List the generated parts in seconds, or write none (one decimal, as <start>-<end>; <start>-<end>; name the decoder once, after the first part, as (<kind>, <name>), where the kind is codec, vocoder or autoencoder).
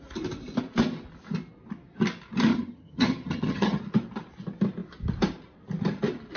2.5-3.8 (vocoder, HiFi-GAN)